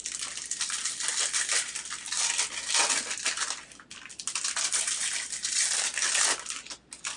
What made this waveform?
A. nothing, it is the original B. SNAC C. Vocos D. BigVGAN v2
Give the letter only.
A